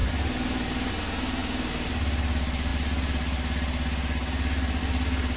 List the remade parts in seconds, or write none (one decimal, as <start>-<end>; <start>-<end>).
none